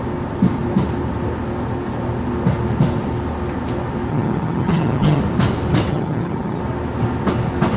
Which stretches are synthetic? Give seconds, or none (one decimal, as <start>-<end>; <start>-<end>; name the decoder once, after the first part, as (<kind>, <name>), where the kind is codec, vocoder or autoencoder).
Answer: 4.1-5.2 (vocoder, HiFi-GAN); 5.9-6.6